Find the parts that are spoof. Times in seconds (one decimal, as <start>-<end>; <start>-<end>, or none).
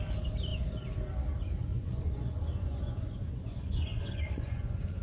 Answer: 1.7-5.0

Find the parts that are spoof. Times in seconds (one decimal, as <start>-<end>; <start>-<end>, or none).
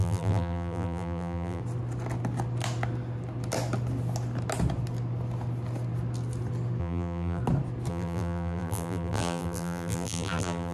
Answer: 0.0-1.6; 6.8-7.4; 7.9-10.7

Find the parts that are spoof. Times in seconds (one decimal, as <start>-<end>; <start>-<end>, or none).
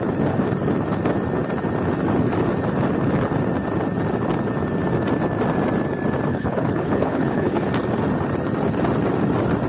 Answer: 6.3-7.7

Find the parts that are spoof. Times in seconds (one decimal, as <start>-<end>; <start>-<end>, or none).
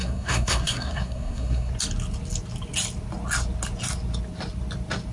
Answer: 0.0-1.7